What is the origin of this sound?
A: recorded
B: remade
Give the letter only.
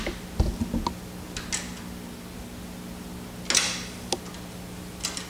A